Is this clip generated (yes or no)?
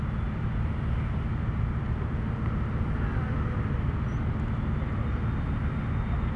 no